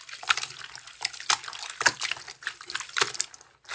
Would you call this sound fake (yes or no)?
no